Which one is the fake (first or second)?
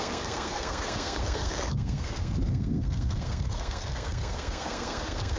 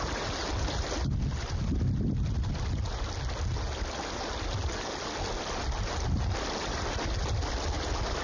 first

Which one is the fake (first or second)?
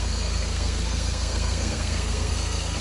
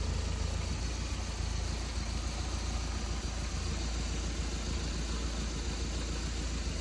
first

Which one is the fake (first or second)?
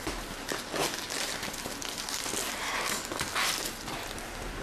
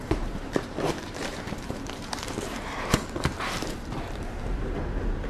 second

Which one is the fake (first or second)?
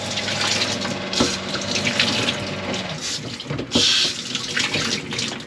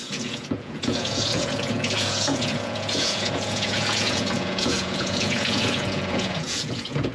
second